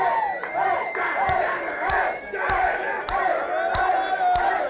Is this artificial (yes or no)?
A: no